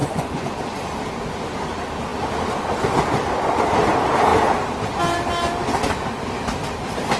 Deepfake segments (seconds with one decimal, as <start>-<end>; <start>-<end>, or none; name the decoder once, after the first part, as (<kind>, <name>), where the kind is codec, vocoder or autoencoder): 0.0-0.5 (vocoder, Vocos)